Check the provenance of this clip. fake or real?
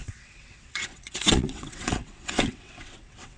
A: fake